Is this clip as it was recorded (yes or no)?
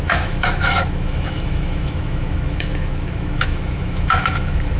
no